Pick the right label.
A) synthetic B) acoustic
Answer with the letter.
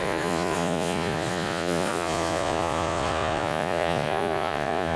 A